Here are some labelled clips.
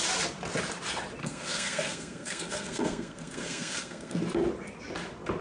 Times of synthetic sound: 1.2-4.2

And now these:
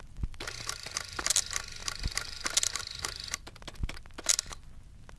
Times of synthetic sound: none

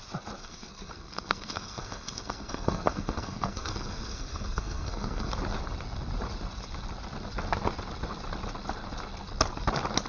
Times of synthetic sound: 0.4-5.3